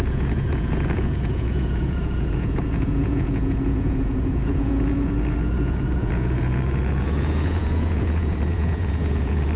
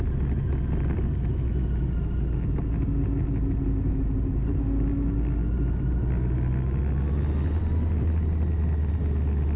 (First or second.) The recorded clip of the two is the second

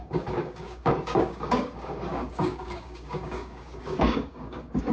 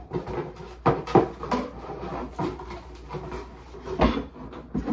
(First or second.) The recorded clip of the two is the second